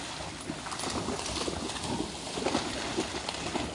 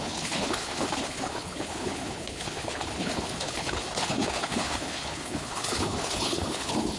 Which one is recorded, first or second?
first